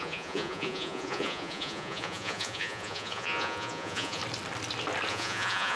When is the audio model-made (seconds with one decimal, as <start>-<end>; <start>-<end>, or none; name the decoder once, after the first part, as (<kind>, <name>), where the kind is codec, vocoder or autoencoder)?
0.0-4.2 (vocoder, Vocos); 5.1-5.8